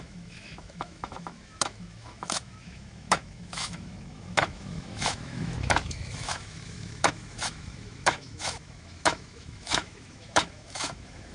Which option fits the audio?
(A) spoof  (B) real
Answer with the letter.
A